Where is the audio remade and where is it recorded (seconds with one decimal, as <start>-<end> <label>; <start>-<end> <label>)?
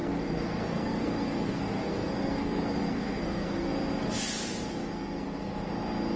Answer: 0.0-3.7 remade; 3.7-4.8 recorded; 4.8-5.7 remade; 5.7-6.2 recorded